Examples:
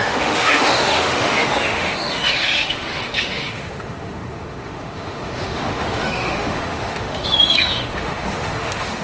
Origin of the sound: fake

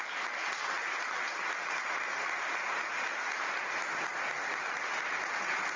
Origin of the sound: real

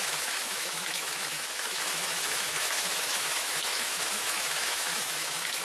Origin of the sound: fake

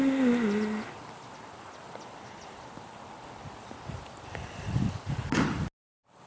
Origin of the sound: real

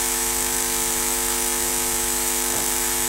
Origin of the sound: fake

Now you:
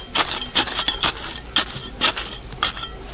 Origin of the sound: real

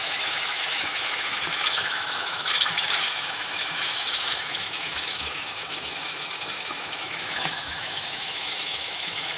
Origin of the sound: fake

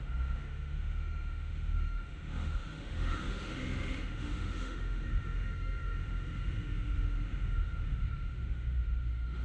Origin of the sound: fake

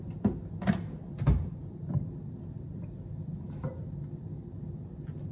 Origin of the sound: real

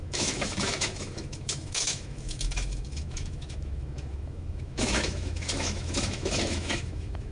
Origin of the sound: fake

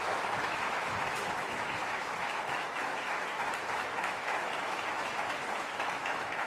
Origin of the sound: fake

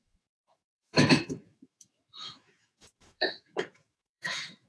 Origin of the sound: fake